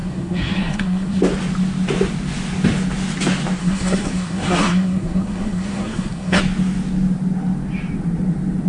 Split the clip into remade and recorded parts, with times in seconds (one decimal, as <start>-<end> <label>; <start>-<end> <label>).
0.0-1.2 remade; 1.2-3.6 recorded; 3.6-6.4 remade; 6.4-8.7 recorded